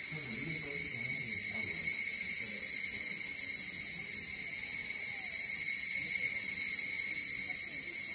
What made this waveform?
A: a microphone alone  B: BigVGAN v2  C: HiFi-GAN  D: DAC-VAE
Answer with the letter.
A